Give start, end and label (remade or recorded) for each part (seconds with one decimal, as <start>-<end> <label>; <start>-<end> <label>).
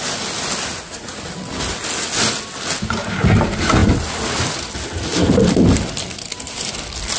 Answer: 0.0-0.7 recorded; 0.7-1.2 remade; 1.2-7.2 recorded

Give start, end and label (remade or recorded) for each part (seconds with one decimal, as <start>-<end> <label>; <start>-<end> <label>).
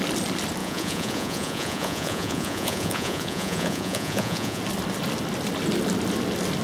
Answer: 0.0-0.6 recorded; 0.6-4.6 remade; 4.6-6.6 recorded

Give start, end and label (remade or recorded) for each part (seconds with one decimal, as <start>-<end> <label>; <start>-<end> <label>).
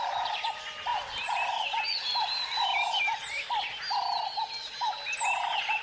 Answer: 0.0-5.8 recorded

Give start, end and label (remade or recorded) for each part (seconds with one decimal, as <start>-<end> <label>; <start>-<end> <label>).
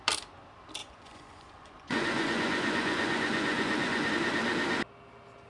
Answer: 0.0-0.8 recorded; 0.8-4.1 remade; 4.1-5.5 recorded